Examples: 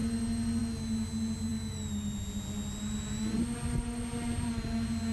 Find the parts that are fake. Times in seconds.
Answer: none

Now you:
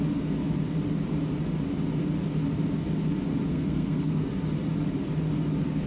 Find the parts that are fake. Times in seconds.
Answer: 3.5-4.3 (codec, SNAC)